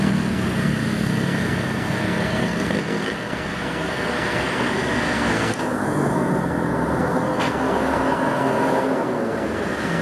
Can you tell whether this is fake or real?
fake